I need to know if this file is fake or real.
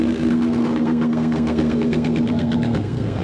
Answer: fake